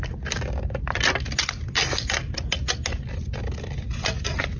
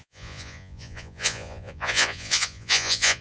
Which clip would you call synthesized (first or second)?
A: second